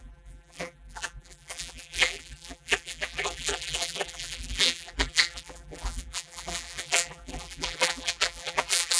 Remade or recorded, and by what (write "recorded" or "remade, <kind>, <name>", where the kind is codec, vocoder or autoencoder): remade, vocoder, BigVGAN v2